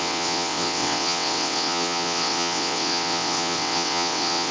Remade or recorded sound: remade